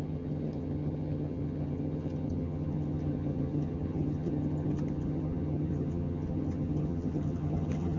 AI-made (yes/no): yes